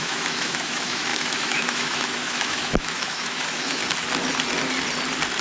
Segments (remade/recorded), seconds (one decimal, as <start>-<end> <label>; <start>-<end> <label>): 0.0-3.8 remade; 3.8-5.4 recorded